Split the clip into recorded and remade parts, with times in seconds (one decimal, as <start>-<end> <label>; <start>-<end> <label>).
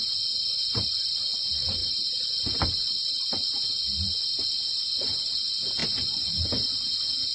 0.0-0.4 recorded; 0.4-1.1 remade; 1.1-1.8 recorded; 1.8-2.4 remade; 2.4-7.3 recorded